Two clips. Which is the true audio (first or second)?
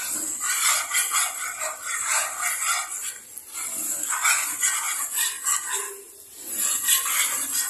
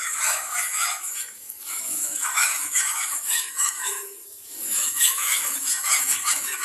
first